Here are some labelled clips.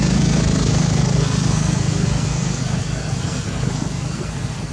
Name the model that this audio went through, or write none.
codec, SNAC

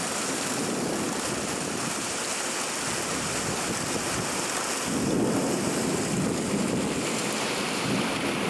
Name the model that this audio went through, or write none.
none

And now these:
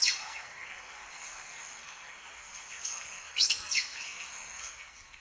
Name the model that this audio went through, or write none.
codec, SNAC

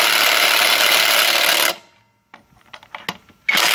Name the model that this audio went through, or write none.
none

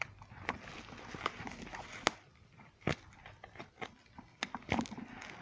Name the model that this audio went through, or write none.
none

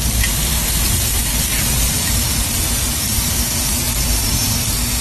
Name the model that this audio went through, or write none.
none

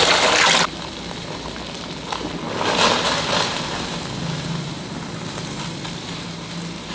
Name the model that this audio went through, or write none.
none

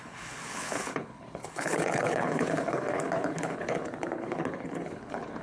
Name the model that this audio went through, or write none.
codec, HILCodec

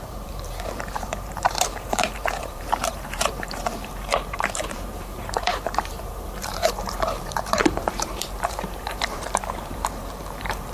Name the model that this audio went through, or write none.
vocoder, BigVGAN v2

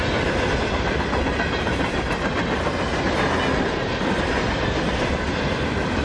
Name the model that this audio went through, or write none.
none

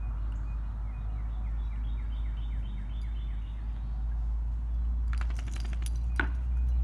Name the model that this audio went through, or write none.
none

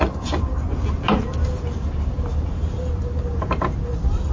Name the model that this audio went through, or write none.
none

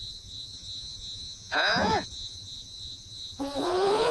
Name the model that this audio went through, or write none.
vocoder, Vocos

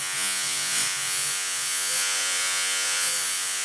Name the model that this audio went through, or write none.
vocoder, Vocos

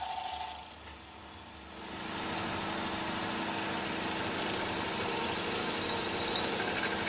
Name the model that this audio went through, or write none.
none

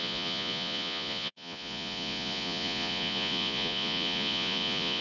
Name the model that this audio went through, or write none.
vocoder, Vocos